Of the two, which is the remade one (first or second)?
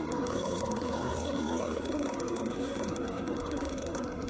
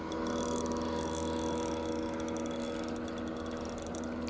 first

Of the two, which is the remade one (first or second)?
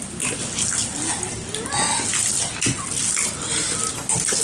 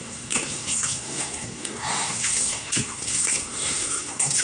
second